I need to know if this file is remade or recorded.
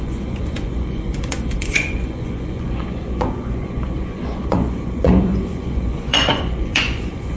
remade